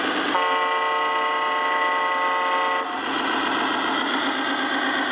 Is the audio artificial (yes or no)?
no